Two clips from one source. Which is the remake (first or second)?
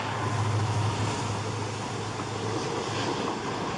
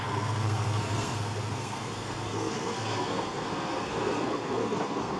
second